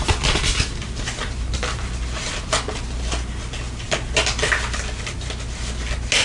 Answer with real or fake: real